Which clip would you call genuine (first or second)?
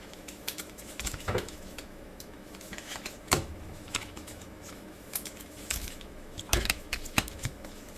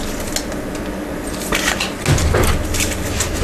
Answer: second